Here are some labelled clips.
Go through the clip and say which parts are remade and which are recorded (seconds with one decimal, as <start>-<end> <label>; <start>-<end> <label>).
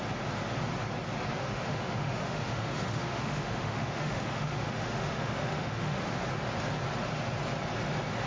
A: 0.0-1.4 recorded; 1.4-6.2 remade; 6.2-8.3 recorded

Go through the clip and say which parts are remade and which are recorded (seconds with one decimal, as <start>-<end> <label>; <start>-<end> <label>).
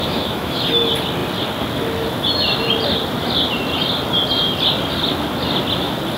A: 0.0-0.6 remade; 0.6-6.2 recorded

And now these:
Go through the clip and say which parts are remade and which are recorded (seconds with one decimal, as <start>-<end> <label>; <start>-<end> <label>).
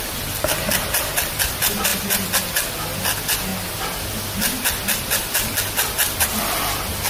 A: 0.0-7.1 recorded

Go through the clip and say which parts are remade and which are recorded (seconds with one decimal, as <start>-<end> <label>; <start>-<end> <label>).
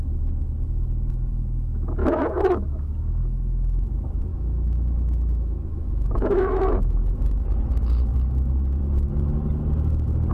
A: 0.0-2.0 recorded; 2.0-3.2 remade; 3.2-4.3 recorded; 4.3-6.9 remade; 6.9-10.3 recorded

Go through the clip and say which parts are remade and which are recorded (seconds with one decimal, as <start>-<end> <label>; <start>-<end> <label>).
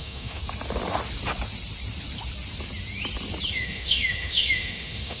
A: 0.0-0.4 remade; 0.4-3.5 recorded; 3.5-5.2 remade